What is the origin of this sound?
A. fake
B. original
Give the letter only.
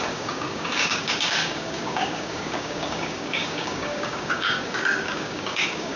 A